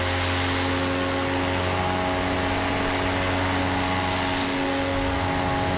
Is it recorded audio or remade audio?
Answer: recorded